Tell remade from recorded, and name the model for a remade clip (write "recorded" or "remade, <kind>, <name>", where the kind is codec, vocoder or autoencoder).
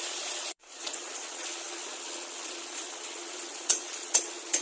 remade, vocoder, Vocos